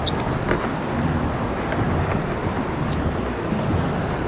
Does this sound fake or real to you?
real